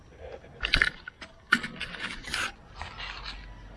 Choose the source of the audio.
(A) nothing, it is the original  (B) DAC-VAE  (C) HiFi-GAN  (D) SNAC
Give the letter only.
A